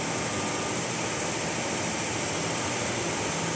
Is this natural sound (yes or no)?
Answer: yes